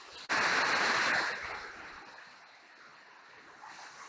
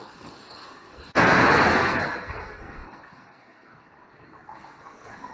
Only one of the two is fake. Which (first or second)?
second